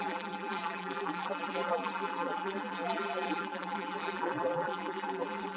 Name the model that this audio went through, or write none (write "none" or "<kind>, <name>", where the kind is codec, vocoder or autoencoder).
vocoder, BigVGAN v2